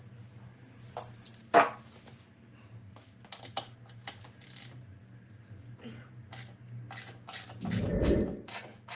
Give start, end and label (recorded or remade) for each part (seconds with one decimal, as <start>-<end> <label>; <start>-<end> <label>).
0.0-8.9 recorded